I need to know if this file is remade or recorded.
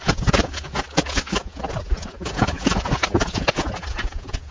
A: remade